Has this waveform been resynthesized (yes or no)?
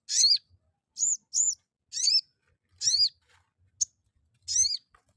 no